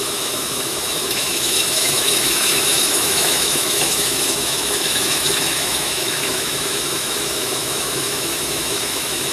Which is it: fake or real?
fake